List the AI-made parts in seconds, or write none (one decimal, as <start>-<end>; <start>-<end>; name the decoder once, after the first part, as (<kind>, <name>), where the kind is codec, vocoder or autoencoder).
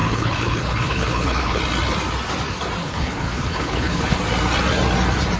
0.0-1.6 (codec, HILCodec); 2.8-4.2